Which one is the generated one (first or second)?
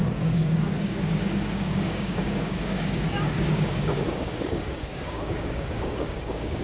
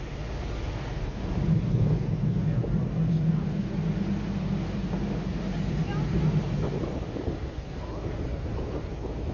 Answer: first